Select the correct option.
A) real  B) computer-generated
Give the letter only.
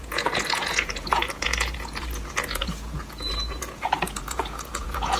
B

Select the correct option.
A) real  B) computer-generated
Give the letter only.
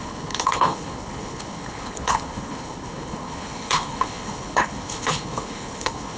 B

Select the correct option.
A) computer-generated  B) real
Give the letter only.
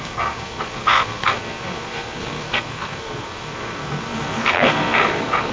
A